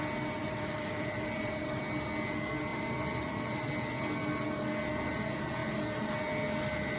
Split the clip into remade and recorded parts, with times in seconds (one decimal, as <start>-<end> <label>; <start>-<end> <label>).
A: 0.0-0.4 recorded; 0.4-1.8 remade; 1.8-2.7 recorded; 2.7-3.7 remade; 3.7-7.0 recorded